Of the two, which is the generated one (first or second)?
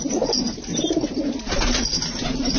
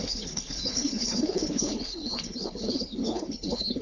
second